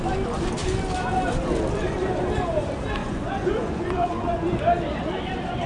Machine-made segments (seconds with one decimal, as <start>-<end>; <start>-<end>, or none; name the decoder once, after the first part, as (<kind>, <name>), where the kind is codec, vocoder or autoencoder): 3.0-4.6 (vocoder, Vocos)